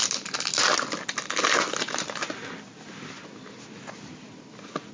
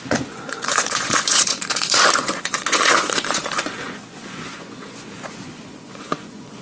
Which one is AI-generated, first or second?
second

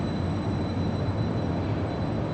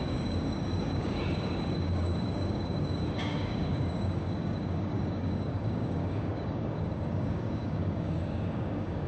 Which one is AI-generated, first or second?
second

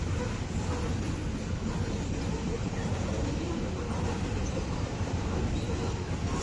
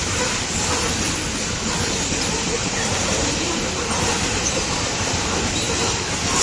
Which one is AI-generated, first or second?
second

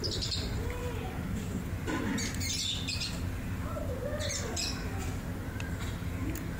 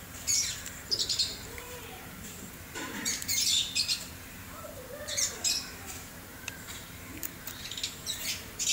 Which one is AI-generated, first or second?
second